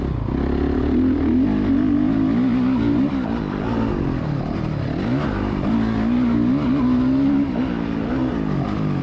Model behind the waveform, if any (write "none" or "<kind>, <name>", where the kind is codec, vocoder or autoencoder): none